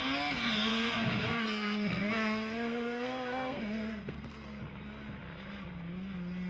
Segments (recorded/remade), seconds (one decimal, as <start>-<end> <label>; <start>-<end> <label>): 0.0-0.7 recorded; 0.7-4.6 remade; 4.6-6.5 recorded